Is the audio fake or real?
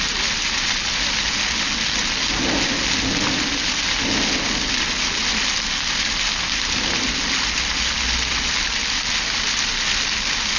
real